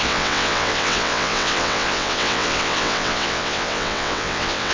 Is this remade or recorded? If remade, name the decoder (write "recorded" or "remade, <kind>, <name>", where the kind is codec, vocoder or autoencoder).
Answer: remade, vocoder, WaveNeXt